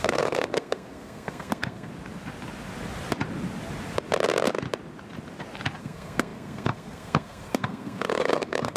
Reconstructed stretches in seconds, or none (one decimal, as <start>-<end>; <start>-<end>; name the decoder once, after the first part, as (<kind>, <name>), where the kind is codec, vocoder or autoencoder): 0.0-1.9 (codec, SNAC); 5.8-8.8